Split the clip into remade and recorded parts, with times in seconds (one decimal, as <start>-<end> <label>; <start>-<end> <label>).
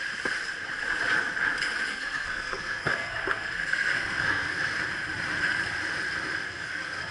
0.0-1.9 recorded; 1.9-4.6 remade; 4.6-6.4 recorded; 6.4-7.1 remade